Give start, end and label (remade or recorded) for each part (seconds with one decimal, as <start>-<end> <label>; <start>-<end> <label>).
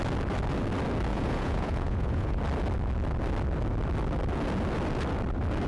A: 0.0-1.1 recorded; 1.1-2.4 remade; 2.4-5.7 recorded